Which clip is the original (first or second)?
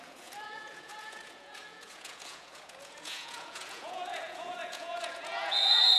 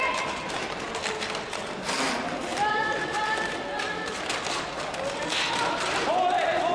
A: second